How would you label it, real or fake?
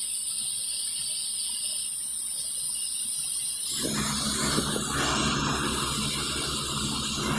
real